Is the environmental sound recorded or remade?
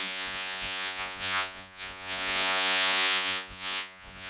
remade